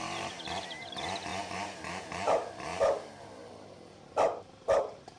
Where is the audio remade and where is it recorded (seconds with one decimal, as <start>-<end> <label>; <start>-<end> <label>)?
0.0-5.2 remade